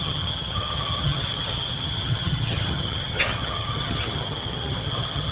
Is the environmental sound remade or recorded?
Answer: remade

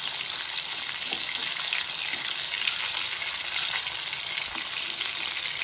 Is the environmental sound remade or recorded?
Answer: recorded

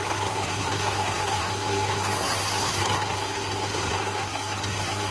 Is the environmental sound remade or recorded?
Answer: remade